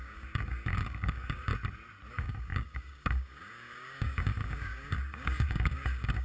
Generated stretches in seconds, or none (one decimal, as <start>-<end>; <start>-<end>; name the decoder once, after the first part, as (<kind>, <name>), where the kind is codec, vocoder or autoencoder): 0.0-1.5 (codec, DAC); 2.1-6.2